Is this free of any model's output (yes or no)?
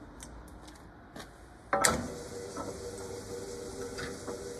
yes